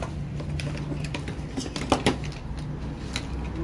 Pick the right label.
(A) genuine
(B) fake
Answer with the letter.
A